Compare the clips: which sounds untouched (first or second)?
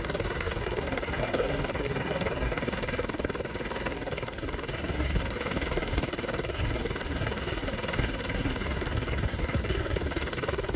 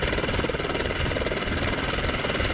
second